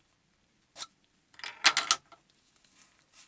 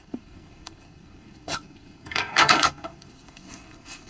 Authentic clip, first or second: first